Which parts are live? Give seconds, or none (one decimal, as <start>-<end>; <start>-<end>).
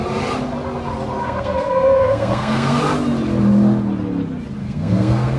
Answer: 0.0-1.2; 2.8-4.6